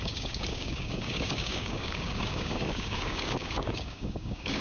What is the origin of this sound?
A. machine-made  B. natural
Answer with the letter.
A